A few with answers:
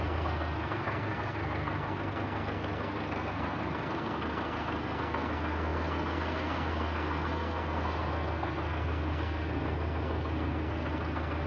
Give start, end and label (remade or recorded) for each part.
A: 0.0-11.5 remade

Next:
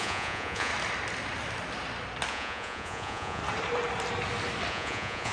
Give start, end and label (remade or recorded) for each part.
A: 0.0-0.7 remade; 0.7-2.3 recorded; 2.3-3.4 remade; 3.4-4.7 recorded; 4.7-5.3 remade

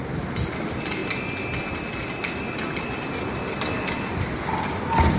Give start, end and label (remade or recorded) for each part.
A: 0.0-5.2 recorded

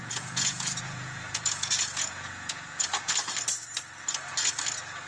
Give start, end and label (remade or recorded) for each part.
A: 0.0-3.1 remade; 3.1-5.1 recorded